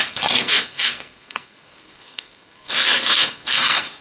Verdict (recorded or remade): remade